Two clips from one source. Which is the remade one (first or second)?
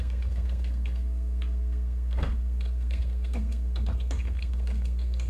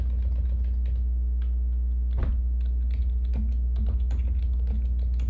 first